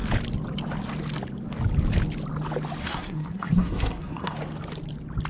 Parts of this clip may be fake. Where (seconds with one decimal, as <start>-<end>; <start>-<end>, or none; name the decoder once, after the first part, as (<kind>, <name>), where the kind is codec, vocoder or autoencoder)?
2.8-4.3 (codec, SNAC)